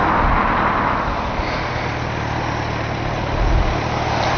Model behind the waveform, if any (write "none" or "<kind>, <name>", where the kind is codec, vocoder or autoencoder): none